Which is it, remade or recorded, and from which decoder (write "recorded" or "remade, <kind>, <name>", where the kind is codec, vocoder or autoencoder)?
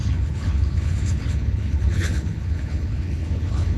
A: remade, codec, HILCodec